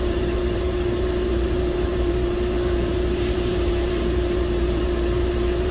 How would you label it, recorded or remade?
remade